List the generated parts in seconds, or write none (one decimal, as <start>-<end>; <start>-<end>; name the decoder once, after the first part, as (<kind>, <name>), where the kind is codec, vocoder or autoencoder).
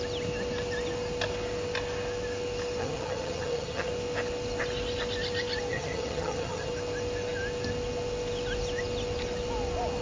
2.8-3.9 (vocoder, HiFi-GAN); 5.7-6.7